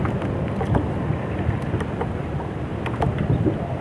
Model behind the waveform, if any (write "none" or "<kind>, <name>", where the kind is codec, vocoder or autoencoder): none